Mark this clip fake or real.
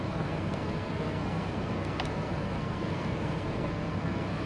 fake